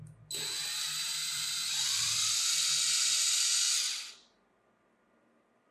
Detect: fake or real real